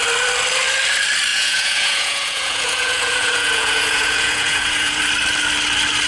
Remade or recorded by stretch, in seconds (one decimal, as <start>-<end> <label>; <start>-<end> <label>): 0.0-1.3 recorded; 1.3-5.0 remade; 5.0-6.1 recorded